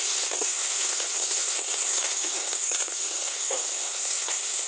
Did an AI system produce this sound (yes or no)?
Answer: yes